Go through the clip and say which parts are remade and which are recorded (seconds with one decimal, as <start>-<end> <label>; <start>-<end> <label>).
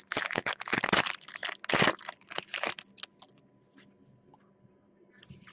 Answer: 0.0-0.4 remade; 0.4-0.9 recorded; 0.9-1.4 remade; 1.4-4.7 recorded; 4.7-5.5 remade